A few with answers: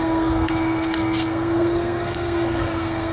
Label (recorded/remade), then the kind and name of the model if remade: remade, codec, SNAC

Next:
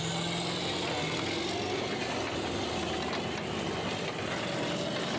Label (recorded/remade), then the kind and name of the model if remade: recorded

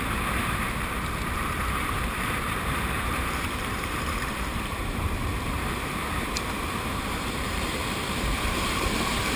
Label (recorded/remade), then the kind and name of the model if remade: remade, vocoder, BigVGAN v2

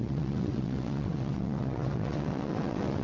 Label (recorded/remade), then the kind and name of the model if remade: remade, vocoder, WaveNeXt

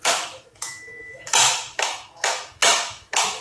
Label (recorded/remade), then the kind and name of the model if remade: remade, autoencoder, DAC-VAE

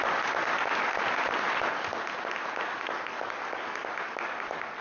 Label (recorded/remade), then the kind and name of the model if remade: recorded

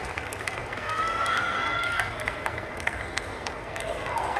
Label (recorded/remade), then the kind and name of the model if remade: remade, codec, SNAC